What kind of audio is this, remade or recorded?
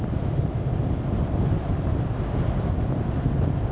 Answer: recorded